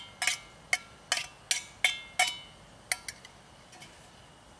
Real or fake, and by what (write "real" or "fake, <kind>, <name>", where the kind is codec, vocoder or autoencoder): real